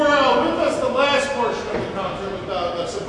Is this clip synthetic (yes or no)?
no